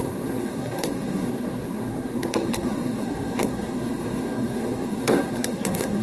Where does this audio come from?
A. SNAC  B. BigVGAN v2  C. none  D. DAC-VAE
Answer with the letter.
A